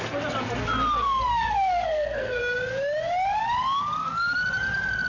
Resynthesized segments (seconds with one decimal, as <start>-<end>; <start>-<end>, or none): 1.0-2.4

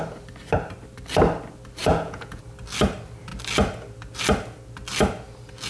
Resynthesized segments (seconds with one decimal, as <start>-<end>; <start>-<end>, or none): 1.8-2.4